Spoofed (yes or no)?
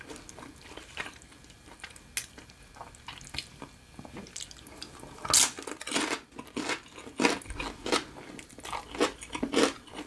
no